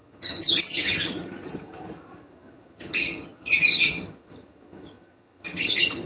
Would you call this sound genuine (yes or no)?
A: no